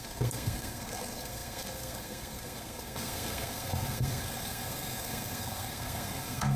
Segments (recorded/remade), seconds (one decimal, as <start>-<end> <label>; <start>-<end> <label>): 0.0-6.6 remade